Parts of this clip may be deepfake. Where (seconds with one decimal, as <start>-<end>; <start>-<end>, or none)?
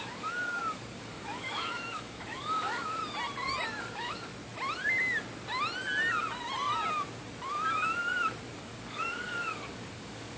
0.0-3.0; 3.8-4.3; 8.6-10.4